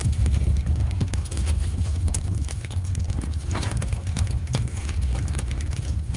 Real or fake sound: fake